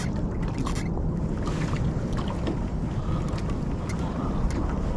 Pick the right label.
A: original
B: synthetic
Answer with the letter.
A